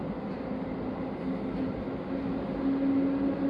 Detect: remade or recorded recorded